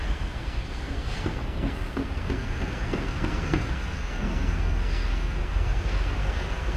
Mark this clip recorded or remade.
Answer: remade